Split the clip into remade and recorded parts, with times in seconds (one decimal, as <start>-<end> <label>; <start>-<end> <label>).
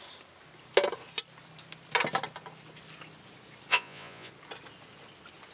0.0-3.7 recorded; 3.7-4.3 remade; 4.3-5.5 recorded